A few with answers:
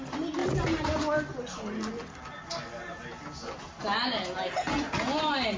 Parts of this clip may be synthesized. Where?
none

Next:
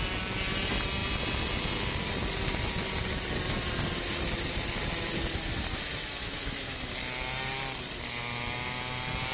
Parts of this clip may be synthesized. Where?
6.2-6.9 (autoencoder, DAC-VAE)

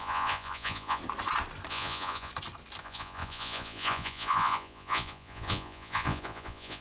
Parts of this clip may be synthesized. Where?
0.0-1.0 (vocoder, Vocos); 1.7-2.3; 2.8-6.8

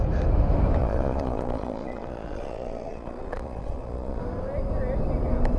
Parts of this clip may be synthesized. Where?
0.8-4.2 (vocoder, Vocos)